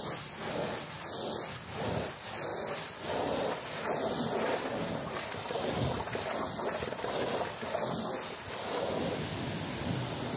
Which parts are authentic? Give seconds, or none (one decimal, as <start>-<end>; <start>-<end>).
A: 0.0-2.5; 4.7-10.4

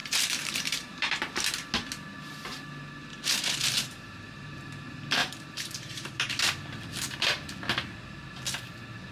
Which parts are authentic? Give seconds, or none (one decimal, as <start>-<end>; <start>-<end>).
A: 1.1-3.1; 4.6-5.2; 6.3-9.1

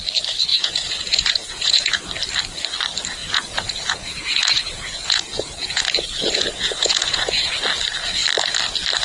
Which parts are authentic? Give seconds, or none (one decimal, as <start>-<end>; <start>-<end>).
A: 0.0-0.5; 2.0-3.2; 7.6-9.0

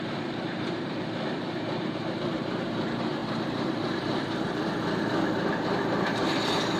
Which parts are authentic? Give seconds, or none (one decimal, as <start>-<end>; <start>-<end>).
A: none

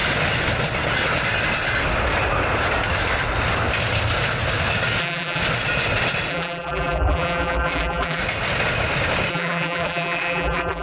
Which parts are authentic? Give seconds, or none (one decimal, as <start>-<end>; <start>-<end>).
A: 0.0-5.0; 5.4-6.3; 8.2-9.3

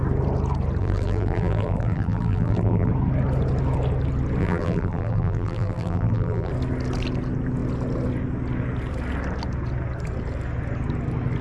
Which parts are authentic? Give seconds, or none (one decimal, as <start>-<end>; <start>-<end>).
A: 0.0-0.8; 2.9-4.4; 6.5-11.4

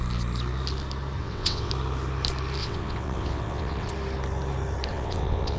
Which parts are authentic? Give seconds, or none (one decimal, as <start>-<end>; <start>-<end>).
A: 0.0-1.2; 1.7-2.6; 3.9-4.9

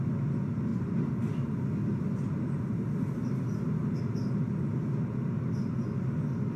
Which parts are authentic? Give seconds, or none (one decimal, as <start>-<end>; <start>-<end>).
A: 0.0-0.7; 4.0-6.6